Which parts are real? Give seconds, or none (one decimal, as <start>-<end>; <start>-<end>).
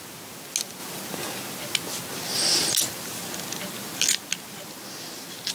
0.0-5.5